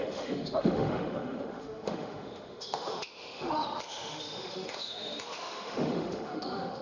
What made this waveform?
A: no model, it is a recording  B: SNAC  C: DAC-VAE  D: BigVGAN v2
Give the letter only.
C